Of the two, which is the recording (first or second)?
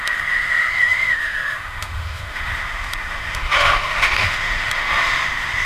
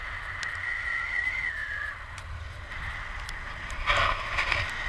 second